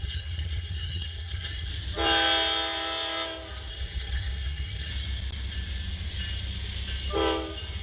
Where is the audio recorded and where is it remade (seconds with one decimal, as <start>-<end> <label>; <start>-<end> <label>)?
0.0-1.7 remade; 1.7-3.7 recorded; 3.7-4.9 remade; 4.9-7.8 recorded